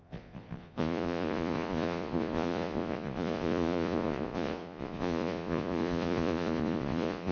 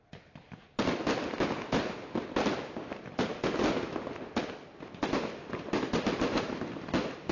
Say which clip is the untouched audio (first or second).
second